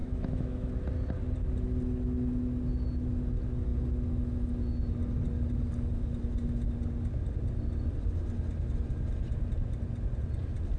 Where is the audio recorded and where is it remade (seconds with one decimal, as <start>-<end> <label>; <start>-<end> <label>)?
0.0-0.7 remade; 0.7-10.8 recorded